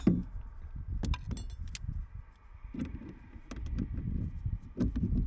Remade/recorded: recorded